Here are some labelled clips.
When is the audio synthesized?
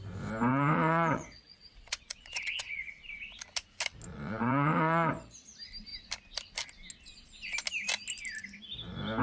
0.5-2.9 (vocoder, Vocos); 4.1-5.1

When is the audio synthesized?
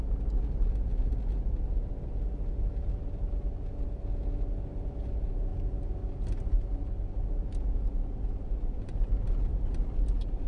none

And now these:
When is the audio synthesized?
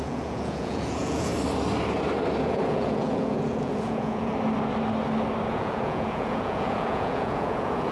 0.0-1.3 (vocoder, Vocos); 2.4-4.3; 5.5-7.9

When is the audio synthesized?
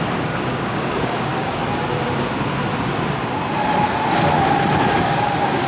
0.0-1.6 (codec, DAC); 5.0-5.7